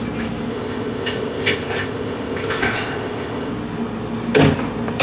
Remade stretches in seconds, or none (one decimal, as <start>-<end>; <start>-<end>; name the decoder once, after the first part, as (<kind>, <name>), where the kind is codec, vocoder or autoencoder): 0.5-3.5 (codec, ZipCodec)